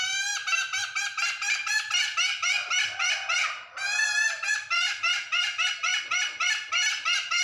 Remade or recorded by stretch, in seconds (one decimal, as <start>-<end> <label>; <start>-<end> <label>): 0.0-7.4 recorded